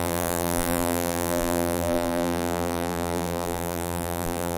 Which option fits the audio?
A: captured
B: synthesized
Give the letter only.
B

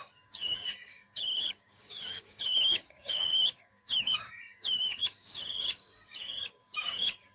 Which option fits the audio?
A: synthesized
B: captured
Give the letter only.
A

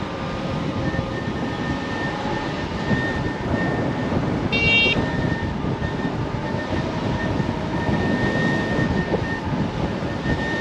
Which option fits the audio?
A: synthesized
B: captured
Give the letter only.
B